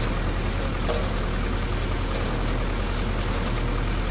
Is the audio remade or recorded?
recorded